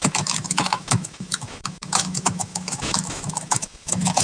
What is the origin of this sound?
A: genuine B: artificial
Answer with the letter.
B